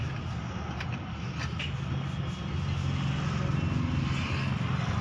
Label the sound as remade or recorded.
recorded